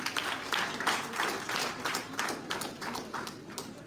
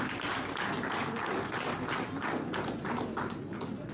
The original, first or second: second